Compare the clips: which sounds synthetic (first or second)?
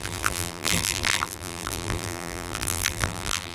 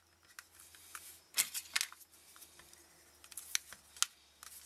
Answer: first